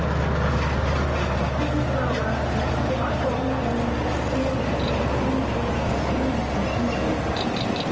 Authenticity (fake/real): real